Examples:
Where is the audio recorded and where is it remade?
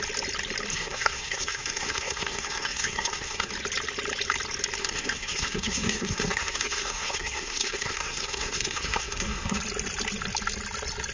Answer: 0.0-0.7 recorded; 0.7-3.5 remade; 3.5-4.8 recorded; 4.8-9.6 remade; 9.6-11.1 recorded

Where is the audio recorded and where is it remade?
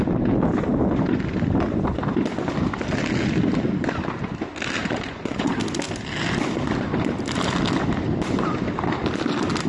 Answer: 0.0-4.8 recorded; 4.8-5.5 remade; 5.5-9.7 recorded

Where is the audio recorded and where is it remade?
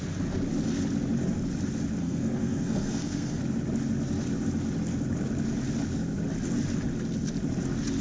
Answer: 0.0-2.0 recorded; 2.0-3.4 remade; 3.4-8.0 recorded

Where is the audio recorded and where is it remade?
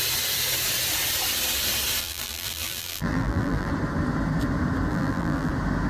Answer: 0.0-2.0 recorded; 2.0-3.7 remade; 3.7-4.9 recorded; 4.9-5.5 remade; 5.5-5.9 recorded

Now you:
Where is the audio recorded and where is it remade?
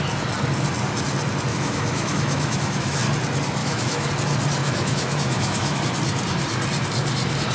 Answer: 0.0-1.5 recorded; 1.5-3.0 remade; 3.0-3.6 recorded; 3.6-4.1 remade; 4.1-4.6 recorded; 4.6-5.8 remade; 5.8-7.5 recorded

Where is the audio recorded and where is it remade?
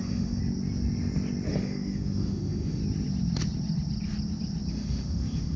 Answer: 0.0-0.4 remade; 0.4-1.5 recorded; 1.5-2.8 remade; 2.8-4.7 recorded; 4.7-5.6 remade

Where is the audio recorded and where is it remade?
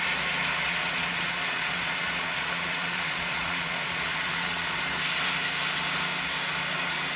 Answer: 0.0-0.7 recorded; 0.7-4.8 remade; 4.8-7.2 recorded